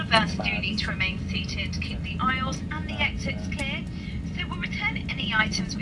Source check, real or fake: real